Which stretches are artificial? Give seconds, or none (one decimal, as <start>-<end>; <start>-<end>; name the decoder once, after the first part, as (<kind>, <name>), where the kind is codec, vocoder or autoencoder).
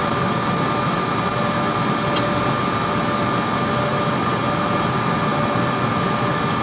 none